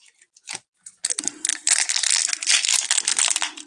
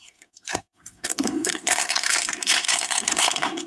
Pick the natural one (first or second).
first